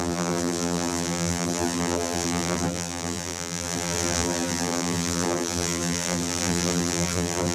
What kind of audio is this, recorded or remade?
remade